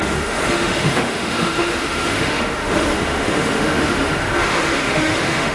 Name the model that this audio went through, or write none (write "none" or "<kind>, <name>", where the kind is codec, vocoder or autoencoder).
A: autoencoder, DAC-VAE